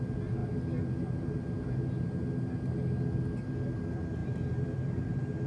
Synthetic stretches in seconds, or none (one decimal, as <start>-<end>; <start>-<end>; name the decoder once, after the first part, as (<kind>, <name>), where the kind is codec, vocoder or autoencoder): 4.2-5.0 (vocoder, BigVGAN v2)